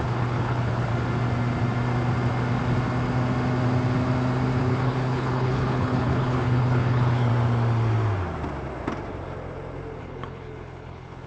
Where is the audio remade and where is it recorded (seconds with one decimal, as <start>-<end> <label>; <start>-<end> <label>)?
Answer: 0.0-0.9 remade; 0.9-4.6 recorded; 4.6-7.3 remade; 7.3-10.0 recorded; 10.0-11.3 remade